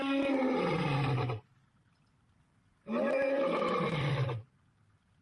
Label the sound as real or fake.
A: real